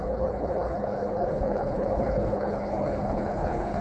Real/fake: fake